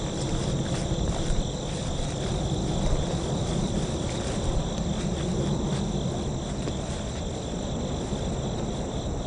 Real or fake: real